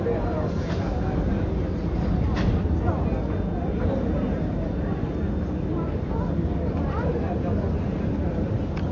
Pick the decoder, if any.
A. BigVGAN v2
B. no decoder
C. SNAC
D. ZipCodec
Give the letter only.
B